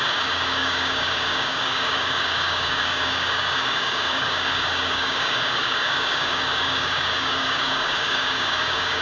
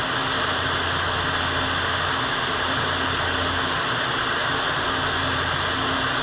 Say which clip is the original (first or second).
second